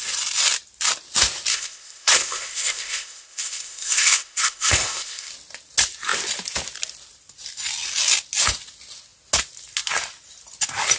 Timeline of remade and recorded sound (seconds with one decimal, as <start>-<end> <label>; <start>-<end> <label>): 0.0-1.5 recorded; 1.5-5.3 remade; 5.3-11.0 recorded